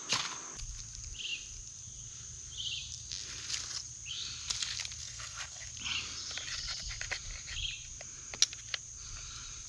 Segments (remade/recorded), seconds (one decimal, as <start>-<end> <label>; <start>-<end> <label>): 0.0-5.0 recorded; 5.0-5.7 remade; 5.7-9.7 recorded